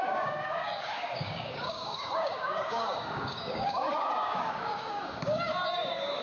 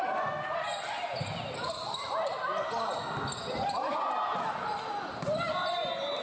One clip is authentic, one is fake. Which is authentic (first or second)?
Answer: second